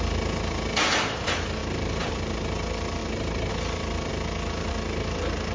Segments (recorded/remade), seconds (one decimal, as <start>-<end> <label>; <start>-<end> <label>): 0.0-1.6 recorded; 1.6-2.1 remade; 2.1-3.0 recorded; 3.0-3.5 remade; 3.5-5.5 recorded